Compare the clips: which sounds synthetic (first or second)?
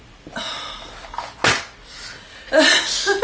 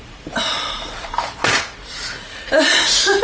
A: second